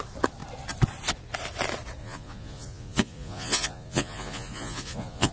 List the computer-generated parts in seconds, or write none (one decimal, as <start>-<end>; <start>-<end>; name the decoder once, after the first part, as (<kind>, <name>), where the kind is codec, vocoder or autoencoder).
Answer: 2.0-5.3 (vocoder, Vocos)